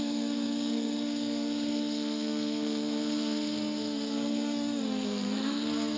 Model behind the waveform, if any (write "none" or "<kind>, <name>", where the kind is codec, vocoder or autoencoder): codec, SNAC